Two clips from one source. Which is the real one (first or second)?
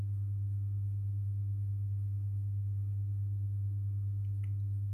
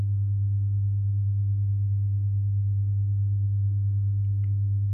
first